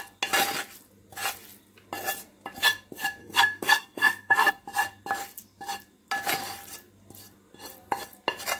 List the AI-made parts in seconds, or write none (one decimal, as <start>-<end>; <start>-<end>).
3.2-4.5